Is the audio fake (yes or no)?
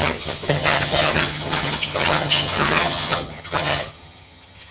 yes